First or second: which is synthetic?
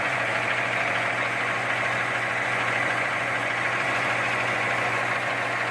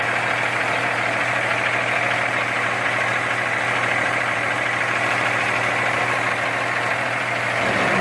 first